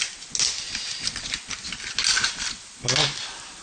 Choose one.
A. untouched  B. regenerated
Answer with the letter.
A